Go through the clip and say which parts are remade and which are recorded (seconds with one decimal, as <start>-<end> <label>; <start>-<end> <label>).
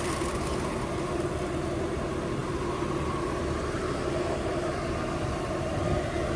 0.0-6.4 recorded